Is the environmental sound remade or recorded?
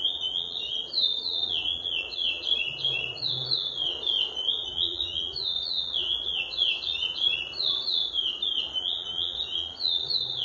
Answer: remade